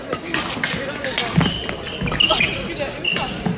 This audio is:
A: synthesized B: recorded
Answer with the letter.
B